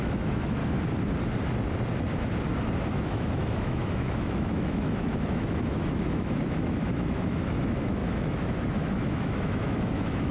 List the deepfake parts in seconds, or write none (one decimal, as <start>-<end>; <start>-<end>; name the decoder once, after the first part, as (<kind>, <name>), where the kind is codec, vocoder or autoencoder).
0.0-0.6 (autoencoder, DAC-VAE); 2.9-10.3